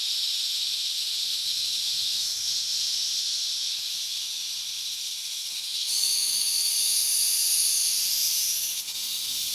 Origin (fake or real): fake